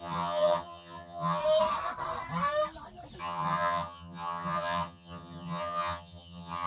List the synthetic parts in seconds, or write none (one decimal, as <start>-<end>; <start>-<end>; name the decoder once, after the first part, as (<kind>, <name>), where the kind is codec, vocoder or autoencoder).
0.0-1.4 (vocoder, HiFi-GAN); 3.2-6.7